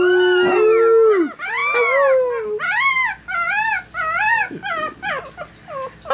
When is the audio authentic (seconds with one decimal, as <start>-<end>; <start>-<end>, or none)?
0.0-6.1